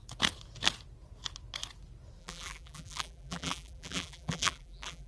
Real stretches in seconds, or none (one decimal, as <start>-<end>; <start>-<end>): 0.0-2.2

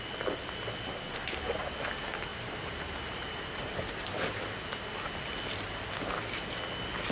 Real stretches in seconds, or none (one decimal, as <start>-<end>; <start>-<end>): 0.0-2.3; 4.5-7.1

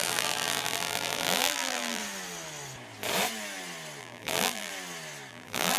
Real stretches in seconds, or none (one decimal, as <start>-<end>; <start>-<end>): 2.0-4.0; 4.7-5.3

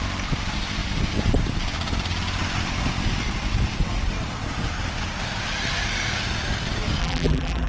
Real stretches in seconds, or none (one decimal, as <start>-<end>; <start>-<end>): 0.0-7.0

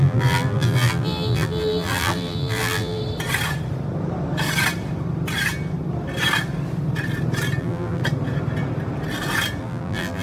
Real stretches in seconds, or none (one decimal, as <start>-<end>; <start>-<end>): 3.0-7.6; 8.0-9.6

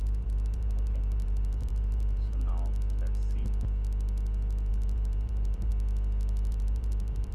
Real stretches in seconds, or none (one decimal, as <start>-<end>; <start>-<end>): 2.5-4.7; 5.7-6.5

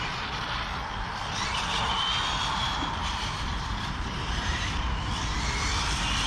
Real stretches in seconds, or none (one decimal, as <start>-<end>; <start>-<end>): 0.0-3.0; 5.1-6.3

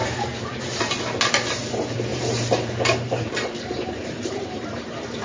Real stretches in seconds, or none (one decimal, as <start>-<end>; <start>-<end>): 0.8-2.1